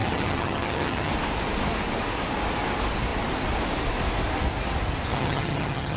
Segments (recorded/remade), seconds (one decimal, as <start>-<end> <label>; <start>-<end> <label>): 0.0-1.1 remade; 1.1-5.1 recorded; 5.1-6.0 remade